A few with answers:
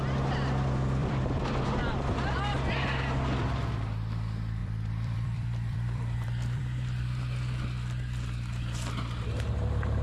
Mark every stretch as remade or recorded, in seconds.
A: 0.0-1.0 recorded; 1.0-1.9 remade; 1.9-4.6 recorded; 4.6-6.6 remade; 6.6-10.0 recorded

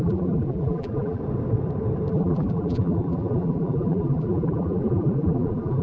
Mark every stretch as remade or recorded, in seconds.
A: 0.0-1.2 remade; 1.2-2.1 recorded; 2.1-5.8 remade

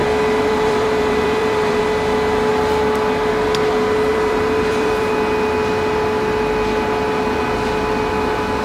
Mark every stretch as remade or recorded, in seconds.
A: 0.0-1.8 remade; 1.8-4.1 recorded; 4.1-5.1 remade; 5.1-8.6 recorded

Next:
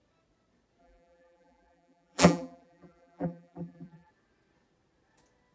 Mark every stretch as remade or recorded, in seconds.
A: 0.0-0.8 recorded; 0.8-4.1 remade; 4.1-5.5 recorded